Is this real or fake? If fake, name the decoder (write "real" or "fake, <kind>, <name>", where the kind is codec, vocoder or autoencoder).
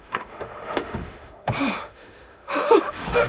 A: fake, autoencoder, DAC-VAE